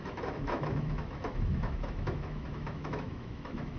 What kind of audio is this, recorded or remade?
remade